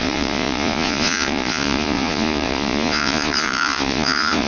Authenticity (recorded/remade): remade